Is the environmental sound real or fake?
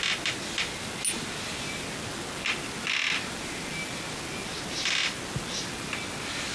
real